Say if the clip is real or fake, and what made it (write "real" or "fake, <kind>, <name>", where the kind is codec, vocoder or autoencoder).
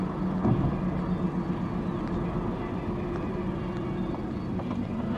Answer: real